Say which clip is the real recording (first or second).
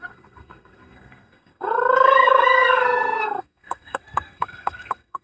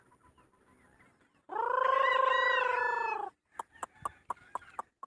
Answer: second